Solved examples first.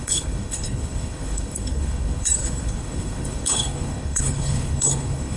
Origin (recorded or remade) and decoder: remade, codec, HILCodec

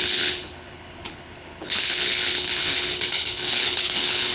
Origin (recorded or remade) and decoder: remade, codec, HILCodec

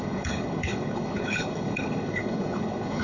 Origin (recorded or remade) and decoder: remade, codec, HILCodec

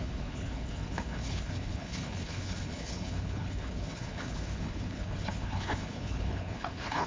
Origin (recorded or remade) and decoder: remade, codec, HILCodec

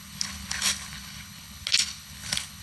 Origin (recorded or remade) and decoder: remade, codec, HILCodec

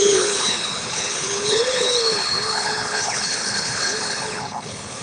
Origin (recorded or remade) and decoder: remade, codec, HILCodec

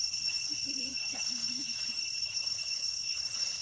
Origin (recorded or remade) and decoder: remade, codec, HILCodec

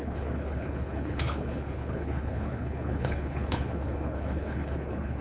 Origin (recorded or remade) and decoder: remade, codec, HILCodec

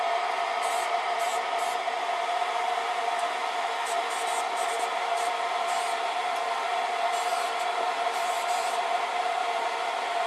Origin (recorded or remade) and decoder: recorded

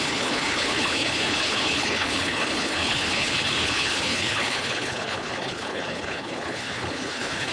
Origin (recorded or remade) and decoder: remade, codec, HILCodec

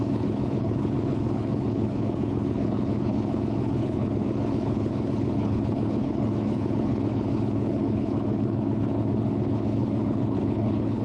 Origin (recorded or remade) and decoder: remade, codec, HILCodec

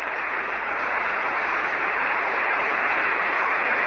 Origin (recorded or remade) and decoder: remade, codec, HILCodec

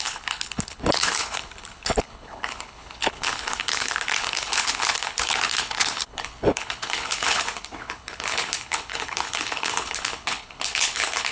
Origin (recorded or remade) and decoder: remade, codec, HILCodec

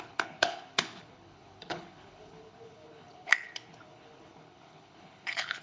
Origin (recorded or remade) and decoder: remade, codec, HILCodec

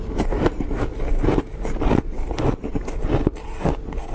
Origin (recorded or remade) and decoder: recorded